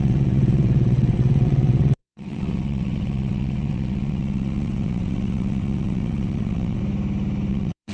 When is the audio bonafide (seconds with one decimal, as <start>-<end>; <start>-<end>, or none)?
6.8-7.5